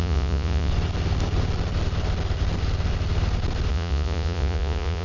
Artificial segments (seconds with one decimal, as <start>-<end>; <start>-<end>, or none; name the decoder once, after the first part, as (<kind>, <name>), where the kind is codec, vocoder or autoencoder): 0.0-0.7 (vocoder, Vocos); 3.7-5.0